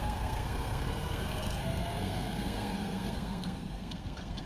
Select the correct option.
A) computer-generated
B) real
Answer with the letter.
A